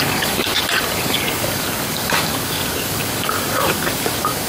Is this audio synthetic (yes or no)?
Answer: yes